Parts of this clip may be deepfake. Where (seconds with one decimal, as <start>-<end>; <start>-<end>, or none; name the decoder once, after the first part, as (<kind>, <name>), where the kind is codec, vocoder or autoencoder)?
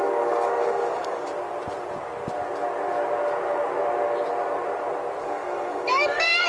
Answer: 0.0-1.3 (codec, DAC); 5.2-6.5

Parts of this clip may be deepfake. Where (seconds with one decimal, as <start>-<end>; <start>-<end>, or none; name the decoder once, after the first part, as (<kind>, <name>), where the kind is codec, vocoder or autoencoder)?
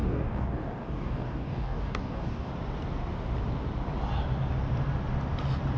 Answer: 0.0-2.5 (codec, DAC)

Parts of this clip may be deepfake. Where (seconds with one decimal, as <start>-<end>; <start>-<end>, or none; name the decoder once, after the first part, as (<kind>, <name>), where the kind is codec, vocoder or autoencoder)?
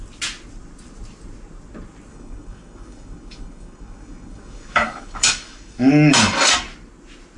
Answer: 2.1-6.5 (codec, DAC)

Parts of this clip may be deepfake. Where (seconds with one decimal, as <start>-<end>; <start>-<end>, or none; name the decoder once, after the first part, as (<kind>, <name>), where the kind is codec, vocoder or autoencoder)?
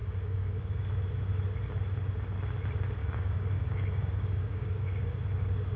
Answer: 0.0-0.9 (codec, DAC); 3.0-5.1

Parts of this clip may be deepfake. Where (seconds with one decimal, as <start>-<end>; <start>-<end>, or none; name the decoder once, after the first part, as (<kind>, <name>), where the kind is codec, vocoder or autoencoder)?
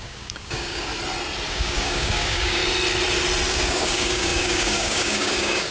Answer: 0.0-0.9 (codec, DAC); 1.5-2.6; 3.5-5.7